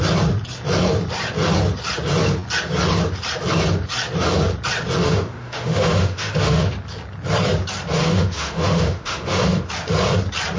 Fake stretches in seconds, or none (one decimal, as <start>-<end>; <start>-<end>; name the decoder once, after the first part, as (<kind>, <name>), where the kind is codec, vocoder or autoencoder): 5.0-6.7 (autoencoder, DAC-VAE); 8.0-9.7